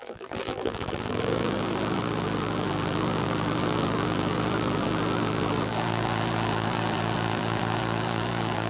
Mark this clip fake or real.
fake